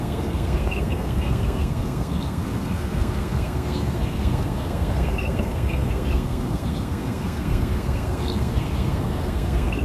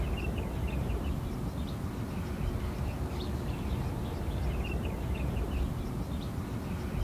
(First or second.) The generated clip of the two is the first